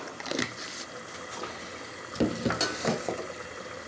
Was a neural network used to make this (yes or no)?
no